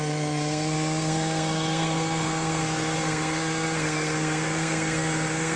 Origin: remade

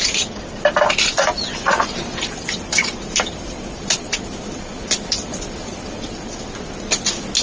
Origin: recorded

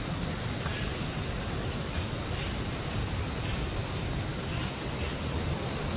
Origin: recorded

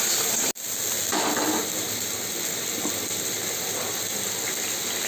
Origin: recorded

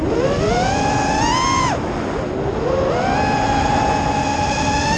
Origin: recorded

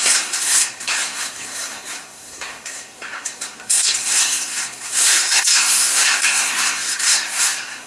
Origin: remade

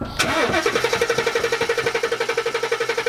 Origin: recorded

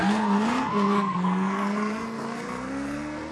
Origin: remade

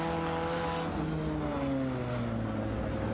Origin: recorded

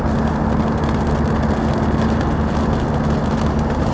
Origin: recorded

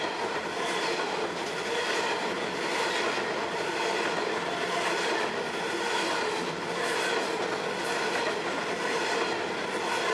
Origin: recorded